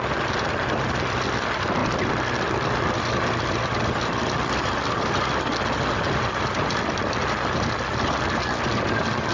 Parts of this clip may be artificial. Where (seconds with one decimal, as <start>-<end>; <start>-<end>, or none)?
none